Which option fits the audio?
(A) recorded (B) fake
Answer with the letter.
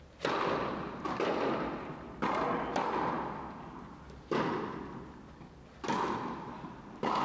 A